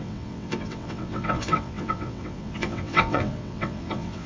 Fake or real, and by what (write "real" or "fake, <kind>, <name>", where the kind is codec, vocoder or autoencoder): fake, vocoder, WaveNeXt